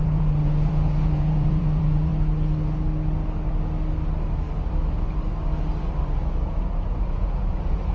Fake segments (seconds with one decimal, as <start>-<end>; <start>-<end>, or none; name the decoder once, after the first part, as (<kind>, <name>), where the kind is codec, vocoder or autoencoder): 0.0-2.1 (vocoder, Vocos); 6.5-7.9